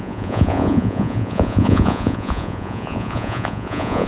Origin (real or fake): fake